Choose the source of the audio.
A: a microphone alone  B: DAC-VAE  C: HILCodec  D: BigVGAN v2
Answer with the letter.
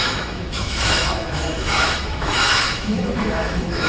B